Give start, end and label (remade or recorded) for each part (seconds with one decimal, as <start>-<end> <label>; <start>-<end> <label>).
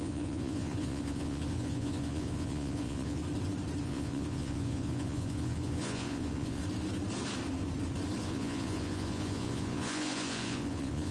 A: 0.0-3.2 remade; 3.2-3.8 recorded; 3.8-6.6 remade; 6.6-8.2 recorded; 8.2-11.1 remade